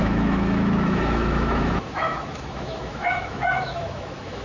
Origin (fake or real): fake